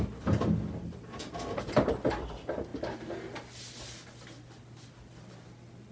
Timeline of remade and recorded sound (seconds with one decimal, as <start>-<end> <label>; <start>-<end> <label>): 0.0-5.9 recorded